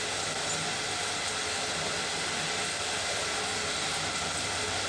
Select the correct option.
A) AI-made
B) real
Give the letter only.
B